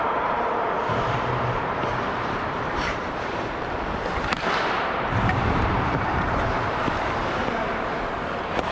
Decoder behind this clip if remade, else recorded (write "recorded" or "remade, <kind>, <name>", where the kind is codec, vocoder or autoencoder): remade, vocoder, BigVGAN v2